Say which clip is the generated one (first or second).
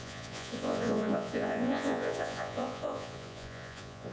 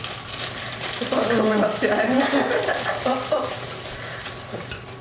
first